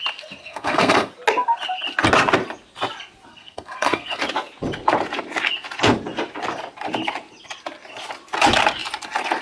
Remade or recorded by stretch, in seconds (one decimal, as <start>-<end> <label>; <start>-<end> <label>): 0.0-0.4 recorded; 0.4-1.1 remade; 1.1-3.3 recorded; 3.3-4.2 remade; 4.2-9.4 recorded